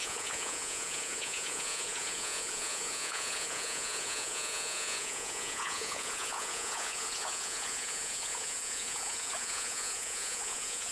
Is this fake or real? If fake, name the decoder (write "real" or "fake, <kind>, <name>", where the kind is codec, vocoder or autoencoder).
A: fake, vocoder, Vocos